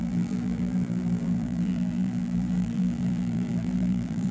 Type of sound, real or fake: fake